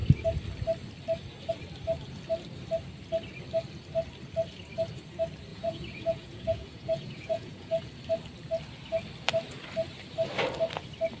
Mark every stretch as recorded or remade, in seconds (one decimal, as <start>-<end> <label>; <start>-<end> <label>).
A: 0.0-5.5 recorded; 5.5-7.9 remade; 7.9-11.2 recorded